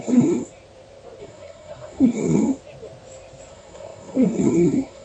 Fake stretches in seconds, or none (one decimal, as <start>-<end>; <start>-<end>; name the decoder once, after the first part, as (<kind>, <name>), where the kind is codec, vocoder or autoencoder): 0.0-0.4 (codec, SNAC); 1.2-2.4; 3.5-5.0